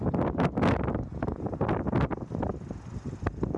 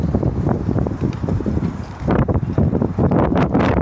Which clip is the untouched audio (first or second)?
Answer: first